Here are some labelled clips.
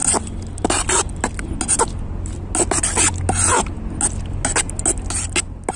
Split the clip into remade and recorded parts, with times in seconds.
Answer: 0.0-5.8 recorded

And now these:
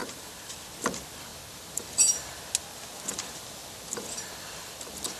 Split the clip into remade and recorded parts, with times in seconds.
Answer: 0.0-0.7 remade; 0.7-5.2 recorded

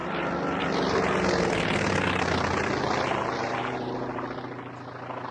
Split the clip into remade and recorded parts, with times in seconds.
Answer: 0.0-0.6 remade; 0.6-3.4 recorded; 3.4-4.4 remade; 4.4-5.3 recorded

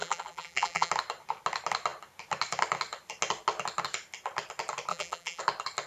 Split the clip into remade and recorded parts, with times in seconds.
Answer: 0.0-0.9 remade; 0.9-4.9 recorded; 4.9-5.4 remade; 5.4-5.9 recorded